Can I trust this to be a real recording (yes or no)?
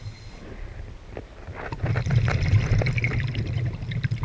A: yes